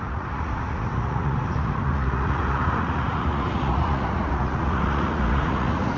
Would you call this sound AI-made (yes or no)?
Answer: yes